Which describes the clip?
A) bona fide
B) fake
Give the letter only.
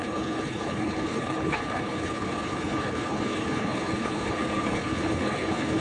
B